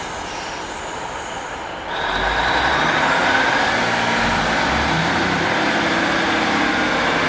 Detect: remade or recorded recorded